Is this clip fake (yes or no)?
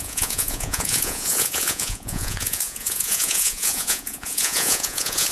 yes